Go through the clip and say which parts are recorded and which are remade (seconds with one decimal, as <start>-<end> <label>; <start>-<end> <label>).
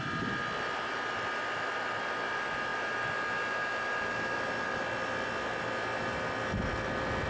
0.0-7.3 recorded